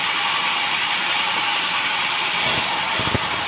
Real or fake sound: real